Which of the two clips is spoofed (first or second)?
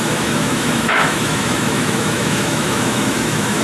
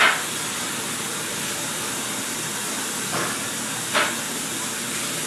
first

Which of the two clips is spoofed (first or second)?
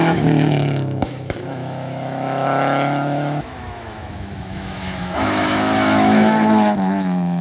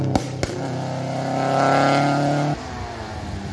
first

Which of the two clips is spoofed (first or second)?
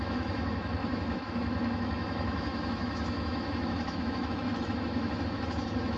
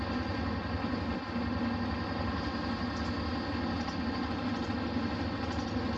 first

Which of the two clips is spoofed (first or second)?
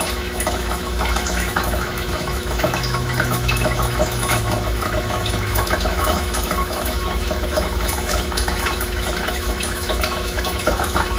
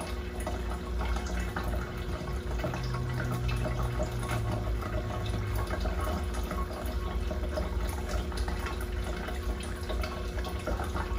first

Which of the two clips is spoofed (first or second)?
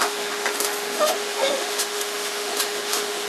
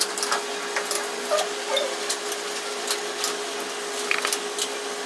first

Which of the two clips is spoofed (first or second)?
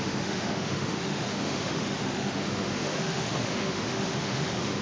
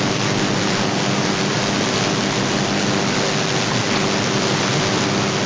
first